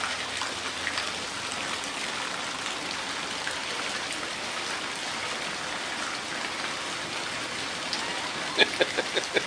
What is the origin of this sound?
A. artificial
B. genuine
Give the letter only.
B